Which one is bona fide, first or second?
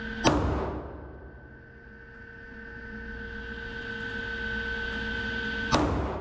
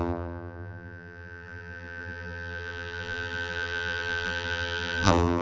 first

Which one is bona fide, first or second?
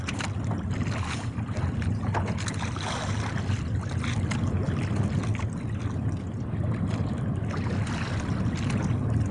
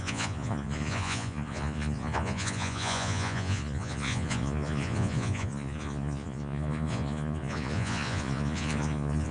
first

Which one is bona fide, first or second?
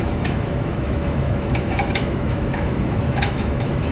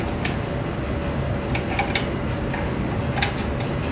second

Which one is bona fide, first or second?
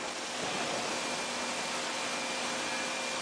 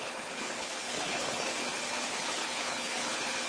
first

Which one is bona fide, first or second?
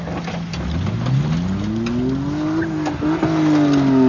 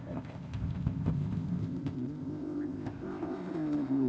first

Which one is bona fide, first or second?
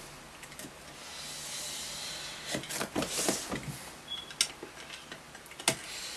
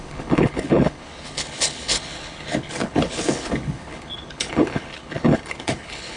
first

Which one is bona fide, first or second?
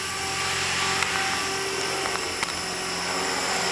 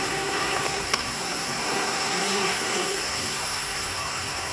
first